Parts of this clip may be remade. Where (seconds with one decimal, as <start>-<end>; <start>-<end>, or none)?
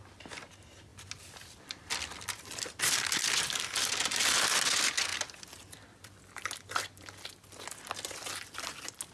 0.9-2.8; 5.1-8.3